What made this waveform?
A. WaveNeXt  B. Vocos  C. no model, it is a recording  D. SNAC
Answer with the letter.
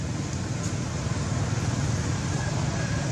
C